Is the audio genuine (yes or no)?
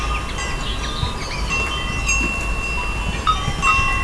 yes